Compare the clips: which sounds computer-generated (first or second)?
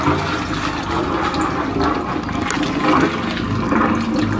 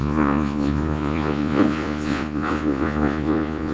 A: second